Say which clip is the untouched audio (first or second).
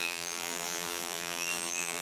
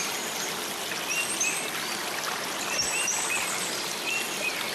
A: second